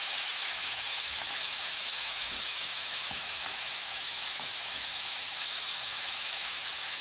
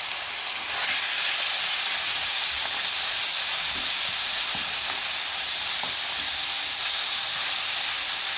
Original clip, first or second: second